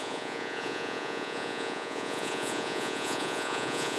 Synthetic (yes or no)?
yes